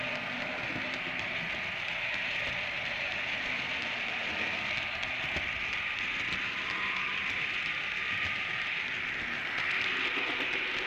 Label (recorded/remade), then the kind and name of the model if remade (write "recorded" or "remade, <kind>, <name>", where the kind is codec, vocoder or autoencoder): recorded